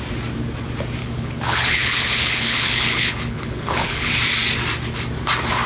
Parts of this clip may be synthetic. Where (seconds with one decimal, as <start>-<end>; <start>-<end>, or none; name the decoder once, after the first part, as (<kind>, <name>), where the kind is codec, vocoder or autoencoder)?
1.0-4.1 (codec, HILCodec)